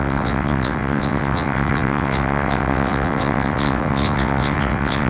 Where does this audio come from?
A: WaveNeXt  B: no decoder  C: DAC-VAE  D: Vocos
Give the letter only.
A